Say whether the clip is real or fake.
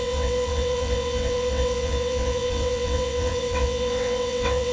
fake